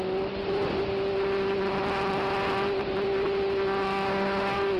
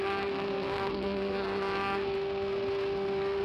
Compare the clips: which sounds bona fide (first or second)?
first